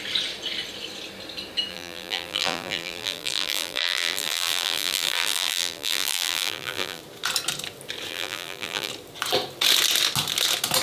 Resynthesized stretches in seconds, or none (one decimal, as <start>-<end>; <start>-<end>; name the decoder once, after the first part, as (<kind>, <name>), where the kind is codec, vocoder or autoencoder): 1.7-7.0 (vocoder, BigVGAN v2); 8.1-8.9